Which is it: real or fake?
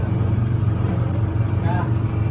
fake